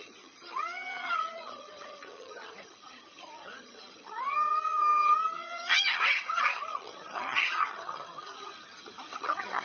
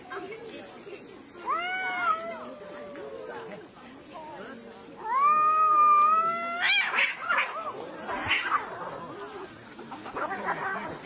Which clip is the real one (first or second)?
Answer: second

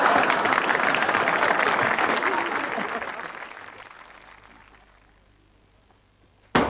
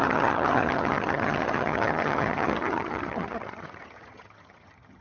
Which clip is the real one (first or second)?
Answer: first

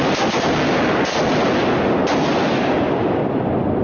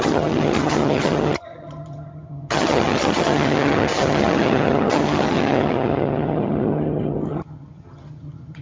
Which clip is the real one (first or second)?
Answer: first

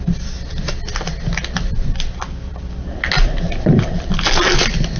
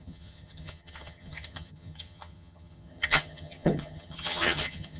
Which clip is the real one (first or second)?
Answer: first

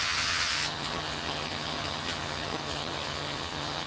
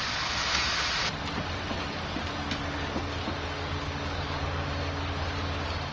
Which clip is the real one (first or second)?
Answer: second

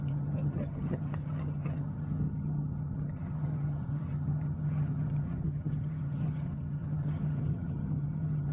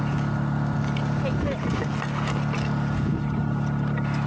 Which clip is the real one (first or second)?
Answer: second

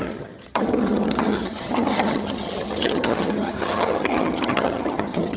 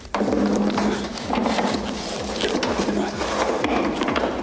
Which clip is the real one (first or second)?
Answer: second